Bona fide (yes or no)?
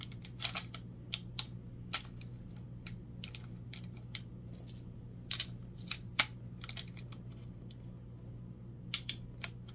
yes